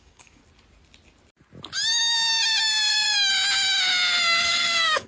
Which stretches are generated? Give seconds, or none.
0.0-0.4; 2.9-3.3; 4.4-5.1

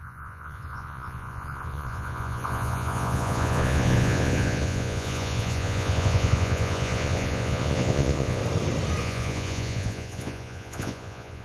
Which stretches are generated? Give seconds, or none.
0.0-8.4; 9.0-11.4

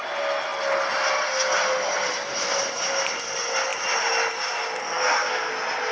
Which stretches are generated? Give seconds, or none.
4.8-5.5

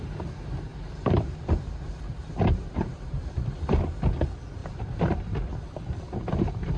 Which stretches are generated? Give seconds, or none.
0.7-3.8; 4.6-5.1

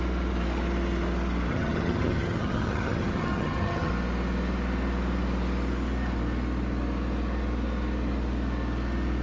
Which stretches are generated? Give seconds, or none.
1.5-3.9

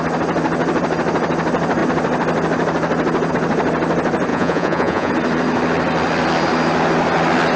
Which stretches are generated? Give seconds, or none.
4.3-5.1

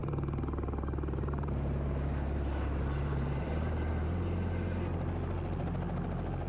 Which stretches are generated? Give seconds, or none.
0.0-3.9

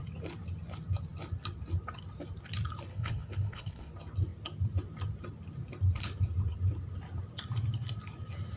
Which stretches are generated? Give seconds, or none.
2.9-3.9